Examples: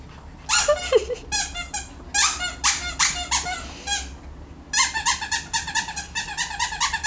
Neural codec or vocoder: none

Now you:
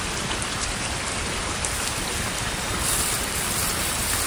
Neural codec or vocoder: none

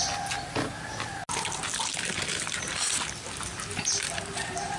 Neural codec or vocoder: none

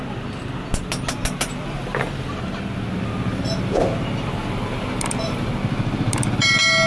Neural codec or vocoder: none